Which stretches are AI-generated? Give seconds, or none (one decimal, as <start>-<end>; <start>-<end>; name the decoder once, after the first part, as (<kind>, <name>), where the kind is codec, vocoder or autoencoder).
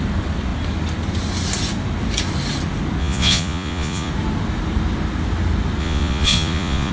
3.0-4.1 (vocoder, Vocos); 5.8-6.9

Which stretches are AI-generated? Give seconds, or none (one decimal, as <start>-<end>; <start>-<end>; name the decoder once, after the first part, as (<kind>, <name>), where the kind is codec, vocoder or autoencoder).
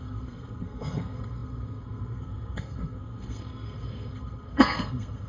0.0-5.3 (codec, SNAC)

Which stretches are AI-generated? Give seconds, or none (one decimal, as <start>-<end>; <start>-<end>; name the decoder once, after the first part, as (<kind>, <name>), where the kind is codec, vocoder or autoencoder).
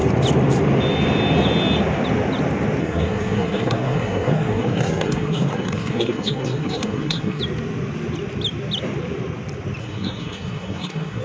2.8-7.4 (codec, SNAC); 9.8-11.2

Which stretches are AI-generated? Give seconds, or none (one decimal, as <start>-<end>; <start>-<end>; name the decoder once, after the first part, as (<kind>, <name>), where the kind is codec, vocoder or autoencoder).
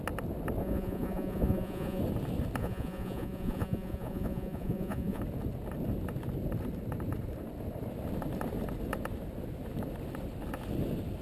0.6-2.0 (vocoder, Vocos); 2.6-5.2